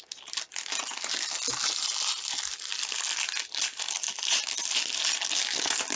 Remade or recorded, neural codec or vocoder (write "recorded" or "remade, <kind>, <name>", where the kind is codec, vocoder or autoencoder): recorded